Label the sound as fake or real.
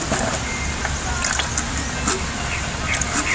real